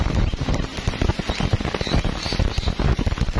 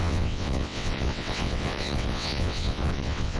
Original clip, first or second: first